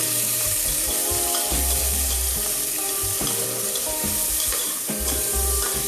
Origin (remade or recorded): remade